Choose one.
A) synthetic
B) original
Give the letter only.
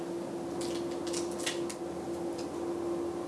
B